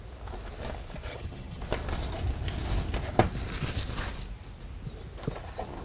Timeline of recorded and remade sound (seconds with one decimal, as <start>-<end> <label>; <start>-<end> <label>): 0.0-1.1 recorded; 1.1-1.6 remade; 1.6-5.8 recorded